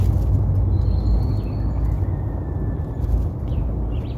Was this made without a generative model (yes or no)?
yes